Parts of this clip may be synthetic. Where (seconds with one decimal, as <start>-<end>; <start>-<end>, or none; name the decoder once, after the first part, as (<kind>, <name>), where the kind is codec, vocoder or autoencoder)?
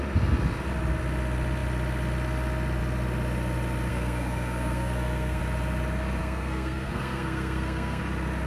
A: 3.9-5.4 (codec, SNAC); 6.2-8.0